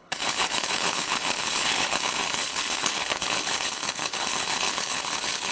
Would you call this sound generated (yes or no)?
yes